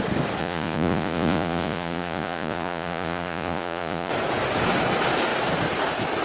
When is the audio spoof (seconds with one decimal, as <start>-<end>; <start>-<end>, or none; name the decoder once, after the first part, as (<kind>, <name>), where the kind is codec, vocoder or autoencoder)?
0.4-4.1 (vocoder, Vocos)